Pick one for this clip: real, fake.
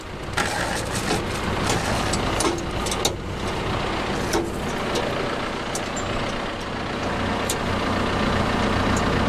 real